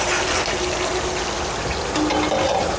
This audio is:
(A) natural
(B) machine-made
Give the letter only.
A